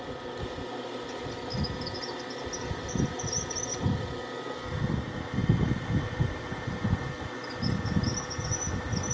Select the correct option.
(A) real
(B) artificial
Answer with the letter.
A